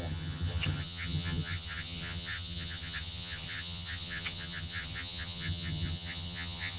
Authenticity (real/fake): fake